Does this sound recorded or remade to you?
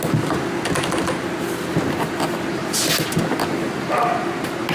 recorded